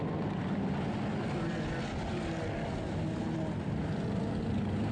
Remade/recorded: recorded